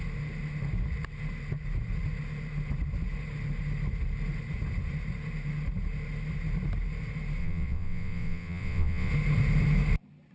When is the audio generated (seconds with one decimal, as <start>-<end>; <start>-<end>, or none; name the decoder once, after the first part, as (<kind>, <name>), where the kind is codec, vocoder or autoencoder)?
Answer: 7.4-9.1 (vocoder, WaveNeXt)